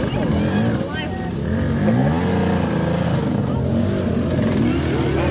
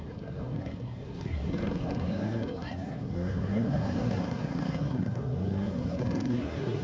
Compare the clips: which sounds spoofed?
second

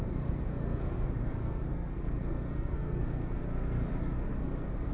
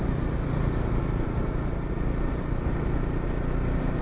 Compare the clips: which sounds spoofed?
first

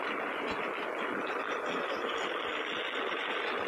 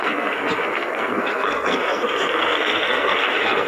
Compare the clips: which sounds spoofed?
second